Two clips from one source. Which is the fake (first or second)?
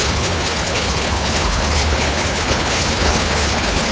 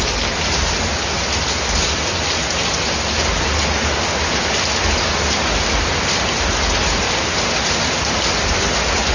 first